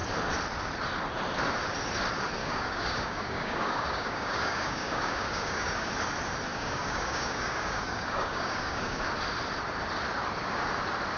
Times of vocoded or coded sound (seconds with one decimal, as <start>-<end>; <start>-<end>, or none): 2.4-5.9; 6.5-9.0